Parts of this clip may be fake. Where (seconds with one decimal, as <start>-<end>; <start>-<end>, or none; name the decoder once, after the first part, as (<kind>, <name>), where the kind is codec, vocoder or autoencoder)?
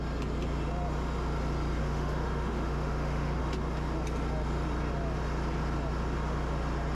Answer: 1.8-3.4 (autoencoder, DAC-VAE)